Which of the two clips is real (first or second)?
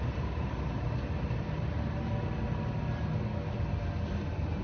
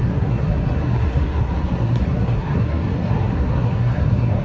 first